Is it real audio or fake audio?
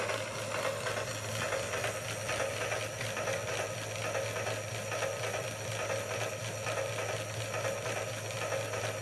real